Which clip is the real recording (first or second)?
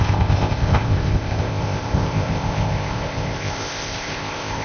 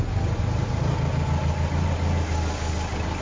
second